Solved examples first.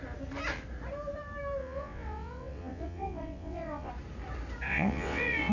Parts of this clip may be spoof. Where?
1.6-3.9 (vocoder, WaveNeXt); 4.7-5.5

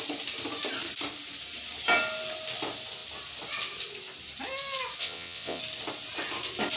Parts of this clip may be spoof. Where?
5.0-5.6 (vocoder, WaveNeXt)

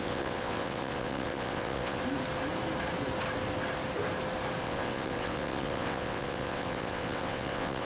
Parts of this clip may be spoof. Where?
0.0-2.0 (vocoder, WaveNeXt); 4.6-7.8